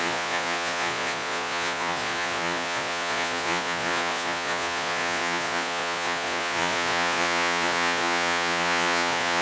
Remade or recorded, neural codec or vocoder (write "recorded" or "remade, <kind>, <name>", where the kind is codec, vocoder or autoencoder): remade, vocoder, Vocos